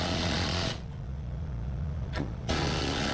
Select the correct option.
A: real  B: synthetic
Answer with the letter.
B